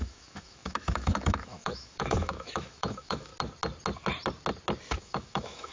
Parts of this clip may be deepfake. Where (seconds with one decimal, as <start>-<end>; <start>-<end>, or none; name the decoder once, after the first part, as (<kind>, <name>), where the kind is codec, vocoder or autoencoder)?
0.0-3.3 (autoencoder, DAC-VAE); 5.0-5.7